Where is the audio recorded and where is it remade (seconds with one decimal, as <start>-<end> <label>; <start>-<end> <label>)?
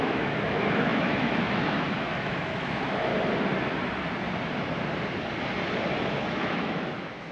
0.0-3.1 remade; 3.1-5.9 recorded; 5.9-7.3 remade